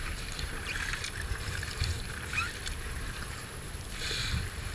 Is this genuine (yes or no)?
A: no